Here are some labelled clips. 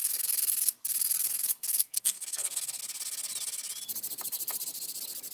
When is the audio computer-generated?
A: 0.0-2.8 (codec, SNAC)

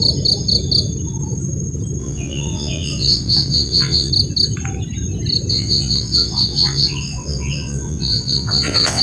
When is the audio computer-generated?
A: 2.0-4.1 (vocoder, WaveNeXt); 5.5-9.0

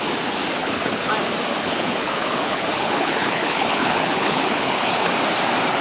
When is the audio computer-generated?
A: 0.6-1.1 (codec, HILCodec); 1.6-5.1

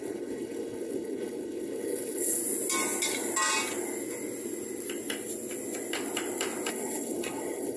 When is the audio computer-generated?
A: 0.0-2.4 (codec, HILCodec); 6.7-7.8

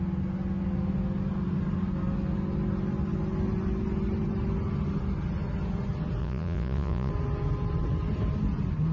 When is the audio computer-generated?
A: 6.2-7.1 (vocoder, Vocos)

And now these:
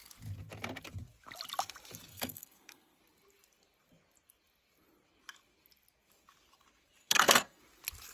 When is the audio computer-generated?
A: 2.1-3.0 (codec, SNAC); 7.0-7.6

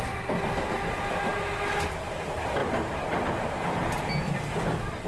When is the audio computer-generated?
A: none

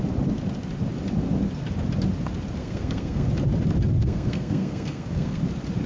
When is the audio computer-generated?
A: 2.6-3.3 (codec, SNAC); 4.0-5.4